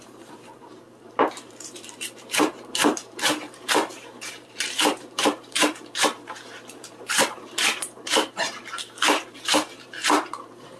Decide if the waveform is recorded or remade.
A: remade